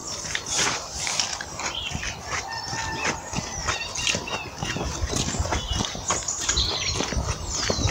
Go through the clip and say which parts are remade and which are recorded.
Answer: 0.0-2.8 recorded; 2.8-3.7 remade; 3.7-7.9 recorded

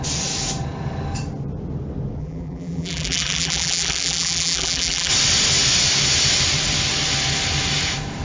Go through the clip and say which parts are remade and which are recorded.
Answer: 0.0-2.2 recorded; 2.2-5.1 remade; 5.1-8.2 recorded

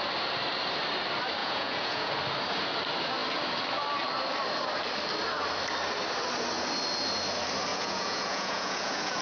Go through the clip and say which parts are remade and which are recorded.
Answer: 0.0-1.4 recorded; 1.4-2.1 remade; 2.1-7.7 recorded; 7.7-9.2 remade

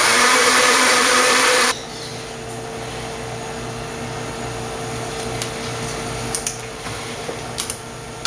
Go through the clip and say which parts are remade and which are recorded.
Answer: 0.0-2.1 remade; 2.1-6.7 recorded; 6.7-8.3 remade

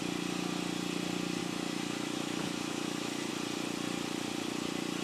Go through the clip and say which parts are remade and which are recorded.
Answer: 0.0-1.4 recorded; 1.4-3.3 remade; 3.3-5.0 recorded

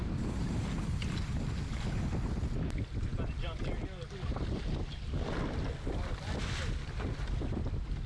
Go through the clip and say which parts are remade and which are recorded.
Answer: 0.0-0.7 remade; 0.7-8.1 recorded

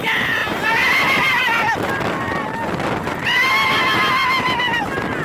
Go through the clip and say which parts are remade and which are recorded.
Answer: 0.0-5.2 recorded